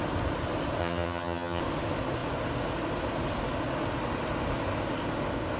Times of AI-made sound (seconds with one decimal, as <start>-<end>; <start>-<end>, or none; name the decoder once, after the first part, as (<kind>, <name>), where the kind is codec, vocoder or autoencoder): 0.8-1.6 (vocoder, HiFi-GAN)